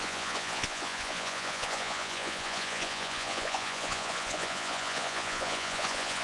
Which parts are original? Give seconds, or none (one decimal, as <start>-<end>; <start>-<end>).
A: none